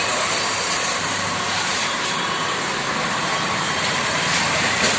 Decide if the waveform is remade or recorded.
remade